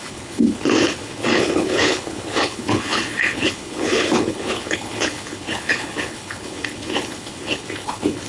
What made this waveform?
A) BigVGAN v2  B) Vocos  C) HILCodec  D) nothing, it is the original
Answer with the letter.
C